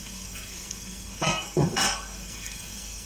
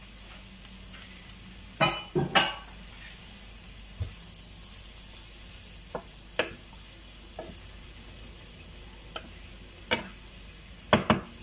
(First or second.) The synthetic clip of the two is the first